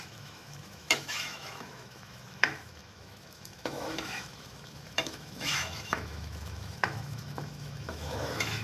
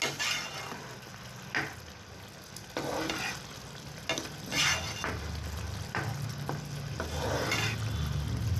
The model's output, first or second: first